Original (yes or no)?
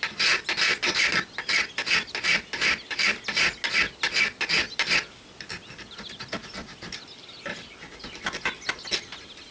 yes